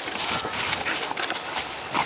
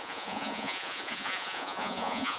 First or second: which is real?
first